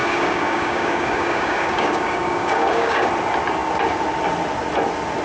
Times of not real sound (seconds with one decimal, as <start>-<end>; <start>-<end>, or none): 0.0-3.1